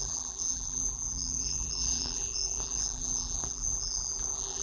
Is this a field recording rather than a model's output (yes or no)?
no